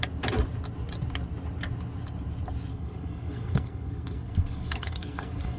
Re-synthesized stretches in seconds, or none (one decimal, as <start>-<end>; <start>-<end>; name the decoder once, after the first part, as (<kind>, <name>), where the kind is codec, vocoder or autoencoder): 2.7-5.6 (codec, SNAC)